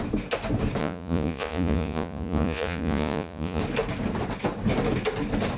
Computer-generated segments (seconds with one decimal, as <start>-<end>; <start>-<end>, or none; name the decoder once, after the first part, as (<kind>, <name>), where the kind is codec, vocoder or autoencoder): 0.8-3.6 (vocoder, Vocos)